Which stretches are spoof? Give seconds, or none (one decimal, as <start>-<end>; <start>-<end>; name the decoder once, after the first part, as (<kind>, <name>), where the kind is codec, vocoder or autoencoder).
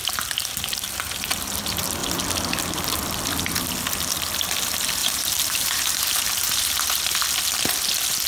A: 0.0-1.3 (vocoder, BigVGAN v2); 5.0-7.0